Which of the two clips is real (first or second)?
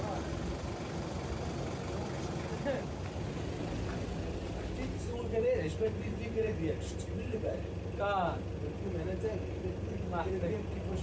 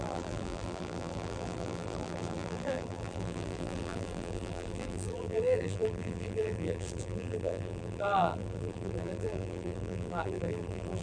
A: first